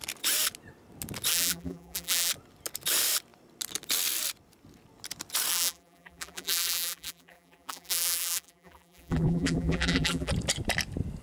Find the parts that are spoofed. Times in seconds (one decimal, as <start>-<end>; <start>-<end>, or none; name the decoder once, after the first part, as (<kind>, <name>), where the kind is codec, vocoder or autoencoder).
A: 1.3-2.3 (vocoder, BigVGAN v2); 5.5-10.3